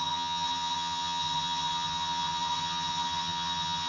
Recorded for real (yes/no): no